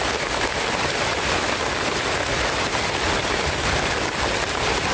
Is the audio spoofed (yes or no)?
no